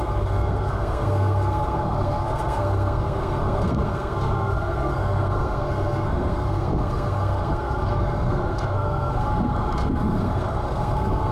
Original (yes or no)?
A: no